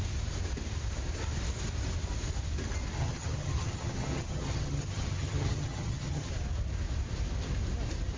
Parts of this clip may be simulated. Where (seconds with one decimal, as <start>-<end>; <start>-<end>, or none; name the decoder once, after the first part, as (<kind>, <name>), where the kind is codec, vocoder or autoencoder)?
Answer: 3.0-6.3 (vocoder, HiFi-GAN)